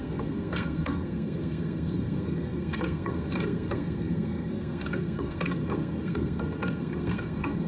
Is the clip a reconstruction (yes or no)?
yes